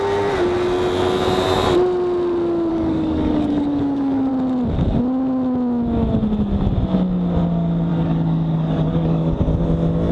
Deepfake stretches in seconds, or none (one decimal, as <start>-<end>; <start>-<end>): 2.7-4.3; 7.9-9.4